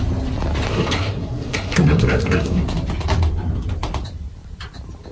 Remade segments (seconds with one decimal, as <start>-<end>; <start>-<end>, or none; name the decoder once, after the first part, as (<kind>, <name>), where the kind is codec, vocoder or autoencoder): 0.7-2.6 (codec, SNAC)